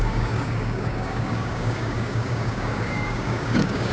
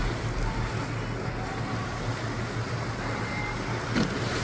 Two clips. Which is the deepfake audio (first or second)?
first